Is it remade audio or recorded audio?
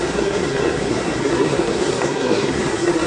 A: remade